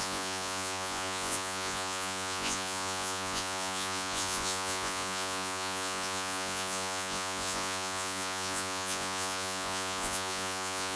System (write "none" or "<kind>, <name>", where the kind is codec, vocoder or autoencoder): vocoder, Vocos